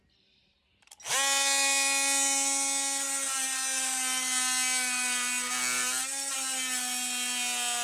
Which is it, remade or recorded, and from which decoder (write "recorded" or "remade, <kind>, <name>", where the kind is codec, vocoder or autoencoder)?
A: recorded